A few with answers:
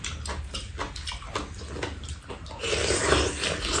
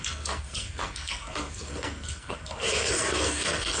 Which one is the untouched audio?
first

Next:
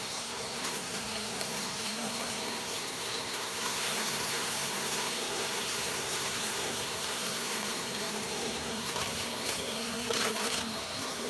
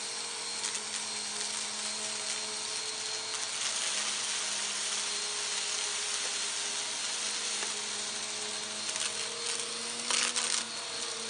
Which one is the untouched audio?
second